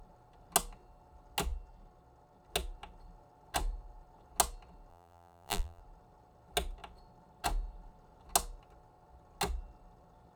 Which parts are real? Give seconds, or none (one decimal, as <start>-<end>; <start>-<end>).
0.0-4.9; 5.8-10.4